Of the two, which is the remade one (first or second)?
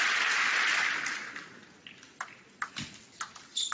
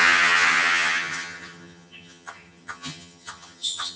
second